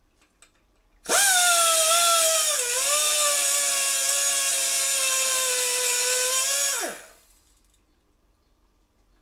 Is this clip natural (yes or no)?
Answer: yes